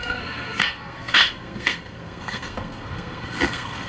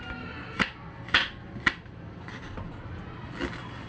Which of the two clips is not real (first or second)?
first